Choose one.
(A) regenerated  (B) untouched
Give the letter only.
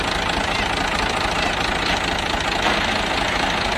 B